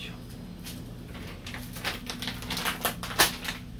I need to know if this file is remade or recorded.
recorded